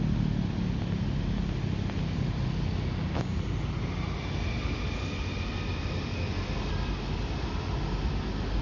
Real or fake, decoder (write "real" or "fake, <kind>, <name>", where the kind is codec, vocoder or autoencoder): real